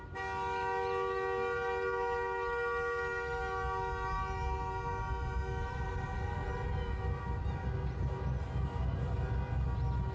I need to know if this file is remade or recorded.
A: recorded